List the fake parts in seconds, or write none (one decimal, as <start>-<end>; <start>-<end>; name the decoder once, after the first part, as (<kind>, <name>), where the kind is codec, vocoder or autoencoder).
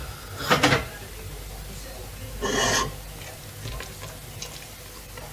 none